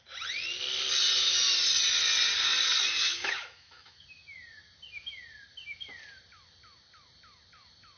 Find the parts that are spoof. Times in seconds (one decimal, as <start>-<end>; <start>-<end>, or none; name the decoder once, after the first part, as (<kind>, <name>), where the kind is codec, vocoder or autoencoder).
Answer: 3.0-4.0 (autoencoder, DAC-VAE)